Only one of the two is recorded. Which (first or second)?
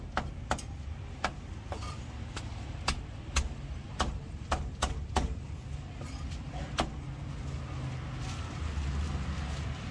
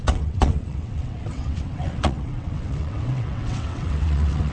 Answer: first